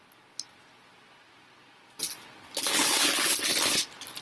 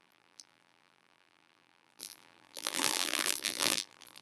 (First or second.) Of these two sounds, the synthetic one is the second